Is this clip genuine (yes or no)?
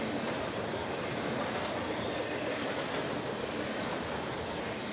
yes